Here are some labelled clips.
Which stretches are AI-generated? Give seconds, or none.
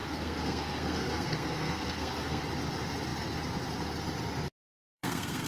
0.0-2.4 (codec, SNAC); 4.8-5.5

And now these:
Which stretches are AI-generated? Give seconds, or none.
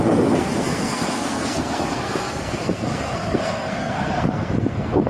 0.0-5.1 (codec, SNAC)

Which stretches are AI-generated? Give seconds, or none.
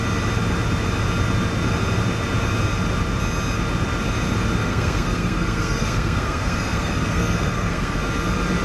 4.6-8.0 (codec, SNAC)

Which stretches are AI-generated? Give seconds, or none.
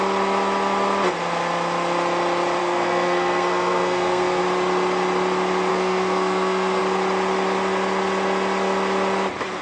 2.6-4.4 (codec, SNAC); 5.7-6.8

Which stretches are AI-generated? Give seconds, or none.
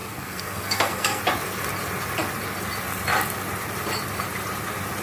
0.0-1.2 (codec, SNAC)